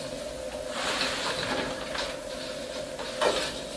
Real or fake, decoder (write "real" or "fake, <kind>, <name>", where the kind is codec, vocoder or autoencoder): real